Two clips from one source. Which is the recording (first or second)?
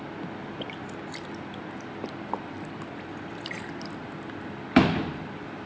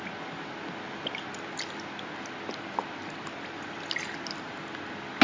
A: second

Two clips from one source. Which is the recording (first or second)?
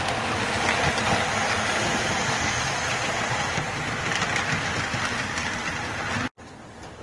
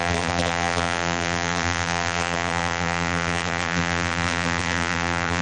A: first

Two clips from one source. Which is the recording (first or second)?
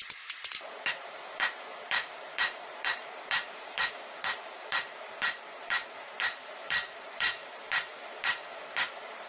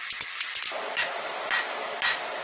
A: second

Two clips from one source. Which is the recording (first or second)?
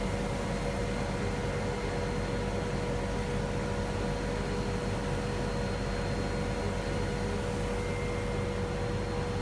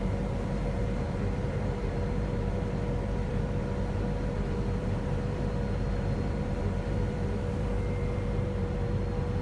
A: first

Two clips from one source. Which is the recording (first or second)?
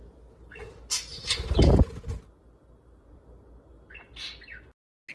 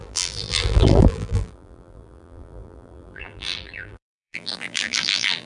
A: first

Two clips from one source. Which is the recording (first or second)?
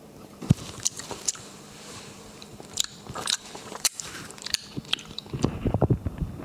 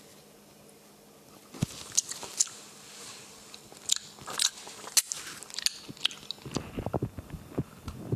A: second